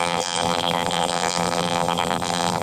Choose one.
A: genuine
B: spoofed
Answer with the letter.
B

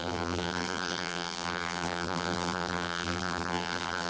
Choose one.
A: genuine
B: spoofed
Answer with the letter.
B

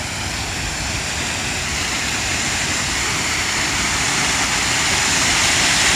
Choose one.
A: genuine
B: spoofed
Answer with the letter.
A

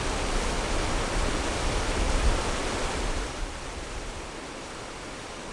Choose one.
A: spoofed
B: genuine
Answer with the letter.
A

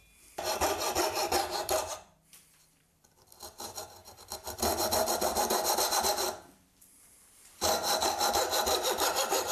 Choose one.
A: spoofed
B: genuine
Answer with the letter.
A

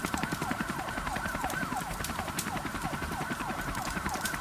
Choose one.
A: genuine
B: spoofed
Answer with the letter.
B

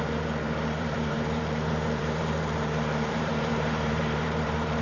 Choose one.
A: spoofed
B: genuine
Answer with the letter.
A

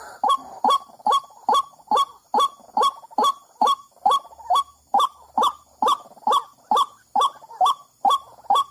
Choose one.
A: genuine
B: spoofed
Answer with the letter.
A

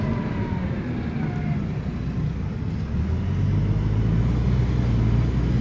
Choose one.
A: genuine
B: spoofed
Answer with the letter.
A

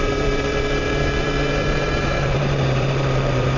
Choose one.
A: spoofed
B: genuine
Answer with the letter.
A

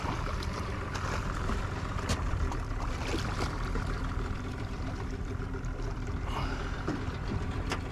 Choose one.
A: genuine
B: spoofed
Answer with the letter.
B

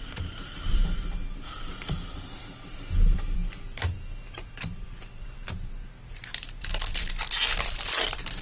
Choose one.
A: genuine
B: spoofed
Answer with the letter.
B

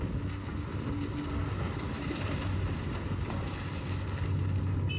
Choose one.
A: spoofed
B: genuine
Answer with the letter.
B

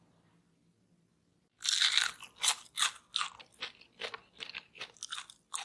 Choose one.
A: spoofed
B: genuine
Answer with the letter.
B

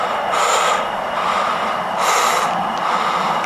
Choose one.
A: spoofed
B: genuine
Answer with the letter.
B